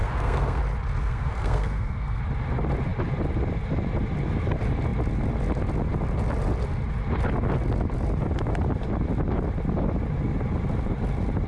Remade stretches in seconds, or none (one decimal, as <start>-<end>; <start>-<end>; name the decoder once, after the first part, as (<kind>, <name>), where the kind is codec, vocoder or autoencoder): 0.0-0.6 (codec, SNAC); 1.0-2.2